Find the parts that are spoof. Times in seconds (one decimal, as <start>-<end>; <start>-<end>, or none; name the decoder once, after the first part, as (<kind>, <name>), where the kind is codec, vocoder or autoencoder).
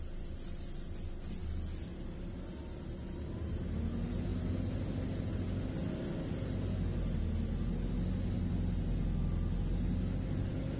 none